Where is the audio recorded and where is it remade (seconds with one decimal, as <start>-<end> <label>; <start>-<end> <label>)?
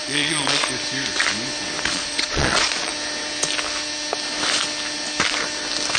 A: 0.0-0.7 remade; 0.7-1.9 recorded; 1.9-2.9 remade; 2.9-6.0 recorded